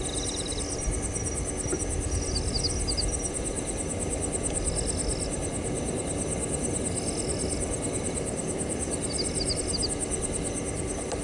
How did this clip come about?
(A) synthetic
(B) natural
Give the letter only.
B